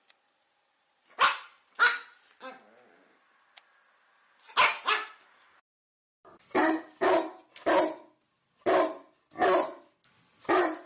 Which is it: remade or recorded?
recorded